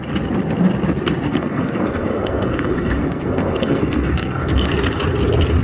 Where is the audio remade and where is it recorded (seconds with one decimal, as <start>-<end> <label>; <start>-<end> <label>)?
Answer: 0.0-1.3 recorded; 1.3-4.7 remade; 4.7-5.6 recorded